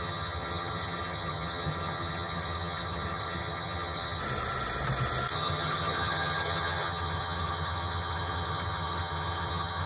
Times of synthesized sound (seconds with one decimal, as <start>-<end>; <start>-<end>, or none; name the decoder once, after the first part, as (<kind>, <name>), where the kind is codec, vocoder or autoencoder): 0.0-4.2 (vocoder, HiFi-GAN); 5.3-9.9